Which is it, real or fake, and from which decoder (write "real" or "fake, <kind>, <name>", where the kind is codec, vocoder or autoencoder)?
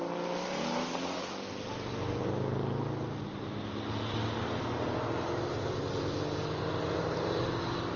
real